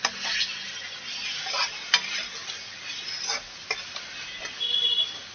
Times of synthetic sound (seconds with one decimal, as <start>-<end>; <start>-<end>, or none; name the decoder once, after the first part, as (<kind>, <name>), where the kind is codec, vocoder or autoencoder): none